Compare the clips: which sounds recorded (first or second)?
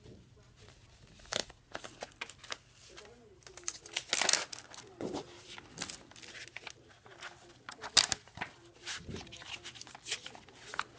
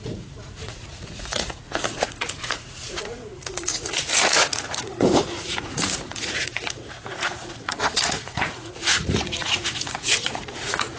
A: first